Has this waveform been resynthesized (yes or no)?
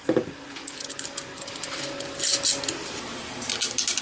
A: no